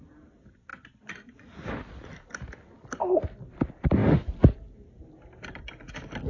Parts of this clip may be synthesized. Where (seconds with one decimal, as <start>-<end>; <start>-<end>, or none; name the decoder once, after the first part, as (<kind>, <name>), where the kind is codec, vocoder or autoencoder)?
0.0-0.7 (vocoder, BigVGAN v2); 2.1-6.3